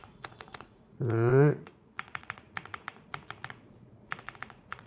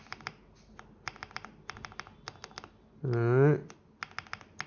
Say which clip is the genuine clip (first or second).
second